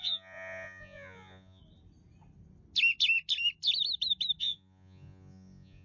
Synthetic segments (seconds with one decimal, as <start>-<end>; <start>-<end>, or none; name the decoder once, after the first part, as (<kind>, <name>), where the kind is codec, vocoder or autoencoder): 0.0-1.6 (vocoder, Vocos); 4.4-5.8